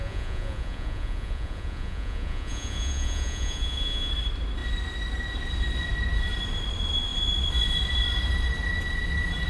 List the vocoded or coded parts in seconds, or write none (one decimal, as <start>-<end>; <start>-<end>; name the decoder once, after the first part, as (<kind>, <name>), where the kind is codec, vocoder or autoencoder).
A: 0.0-4.1 (vocoder, Vocos)